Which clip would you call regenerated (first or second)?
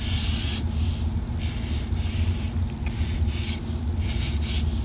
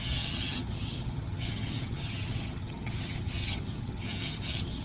second